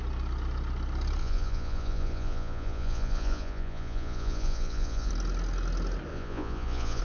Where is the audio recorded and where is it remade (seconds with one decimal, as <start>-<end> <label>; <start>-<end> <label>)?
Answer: 0.0-1.2 recorded; 1.2-5.1 remade; 5.1-6.1 recorded; 6.1-7.0 remade